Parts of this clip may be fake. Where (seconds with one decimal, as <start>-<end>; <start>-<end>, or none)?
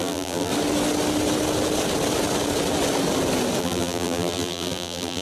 0.0-0.5; 3.6-5.2